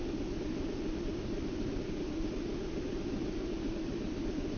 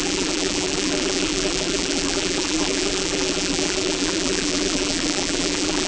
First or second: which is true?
first